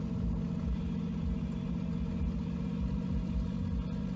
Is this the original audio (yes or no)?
yes